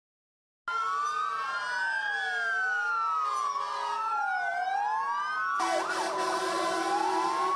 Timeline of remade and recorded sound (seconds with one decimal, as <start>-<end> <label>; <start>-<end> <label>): 0.0-7.6 recorded